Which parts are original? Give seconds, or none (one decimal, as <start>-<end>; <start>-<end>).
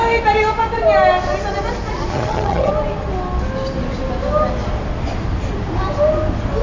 0.0-2.1; 2.7-6.6